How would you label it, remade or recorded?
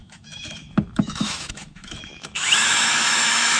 remade